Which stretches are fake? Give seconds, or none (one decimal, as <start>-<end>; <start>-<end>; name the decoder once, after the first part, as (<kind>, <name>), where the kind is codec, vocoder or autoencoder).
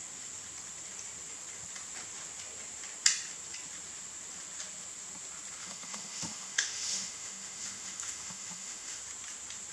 5.6-9.0 (autoencoder, DAC-VAE)